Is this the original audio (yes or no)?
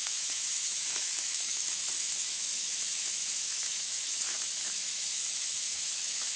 no